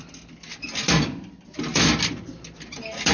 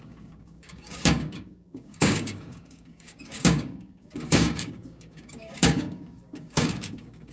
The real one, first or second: first